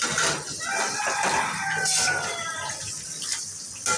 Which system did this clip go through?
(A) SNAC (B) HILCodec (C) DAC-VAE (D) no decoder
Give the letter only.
D